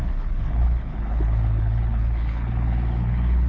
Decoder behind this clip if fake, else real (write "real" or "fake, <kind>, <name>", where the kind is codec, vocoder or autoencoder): fake, codec, HILCodec